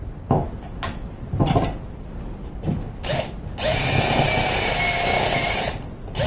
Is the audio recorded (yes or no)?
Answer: yes